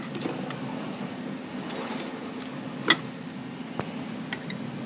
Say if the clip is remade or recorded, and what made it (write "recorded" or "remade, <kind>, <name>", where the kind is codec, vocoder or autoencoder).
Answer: recorded